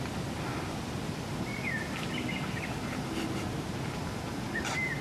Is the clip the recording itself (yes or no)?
no